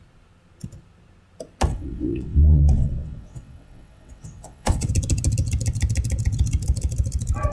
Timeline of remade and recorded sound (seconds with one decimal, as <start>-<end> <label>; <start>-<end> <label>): 0.0-1.7 recorded; 1.7-4.9 remade; 4.9-7.5 recorded